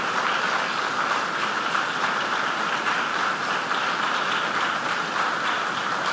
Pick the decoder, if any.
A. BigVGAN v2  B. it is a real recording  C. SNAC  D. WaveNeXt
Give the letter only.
B